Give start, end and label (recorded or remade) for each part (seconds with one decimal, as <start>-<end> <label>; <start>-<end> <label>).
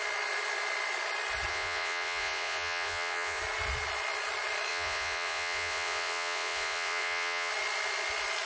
0.0-1.5 recorded; 1.5-3.4 remade; 3.4-4.7 recorded; 4.7-7.5 remade; 7.5-8.5 recorded